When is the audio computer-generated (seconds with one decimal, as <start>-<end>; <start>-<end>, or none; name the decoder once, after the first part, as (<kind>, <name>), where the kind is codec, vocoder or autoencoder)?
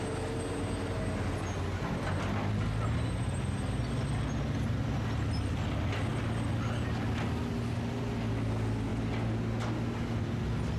none